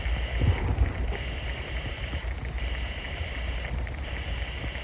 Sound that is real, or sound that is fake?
real